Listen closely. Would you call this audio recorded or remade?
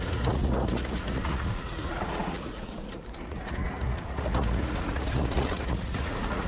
remade